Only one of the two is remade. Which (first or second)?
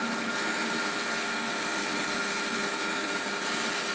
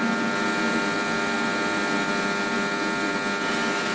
first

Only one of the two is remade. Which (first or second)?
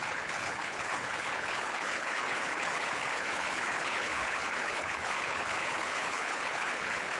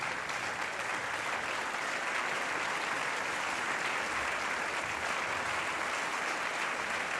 first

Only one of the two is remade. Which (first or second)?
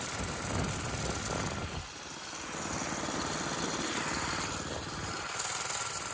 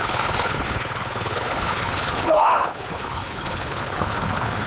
second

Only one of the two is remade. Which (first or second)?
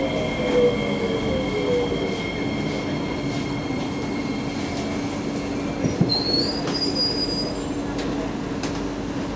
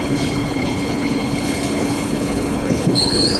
second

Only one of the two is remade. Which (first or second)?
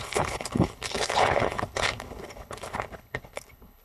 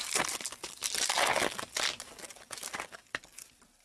first